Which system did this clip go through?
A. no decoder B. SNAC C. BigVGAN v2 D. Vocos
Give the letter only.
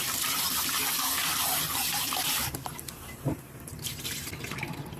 C